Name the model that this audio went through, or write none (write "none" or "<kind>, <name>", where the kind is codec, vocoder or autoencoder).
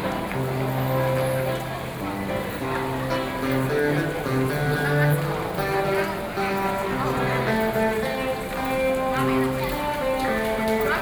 none